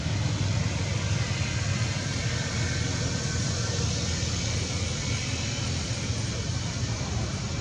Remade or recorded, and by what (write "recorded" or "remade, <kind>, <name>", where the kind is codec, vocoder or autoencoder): recorded